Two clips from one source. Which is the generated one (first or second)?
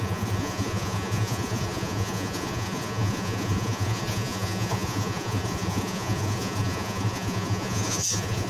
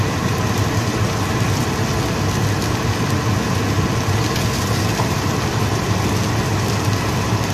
first